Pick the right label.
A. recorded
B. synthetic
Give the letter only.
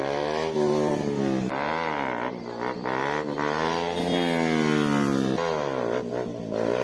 A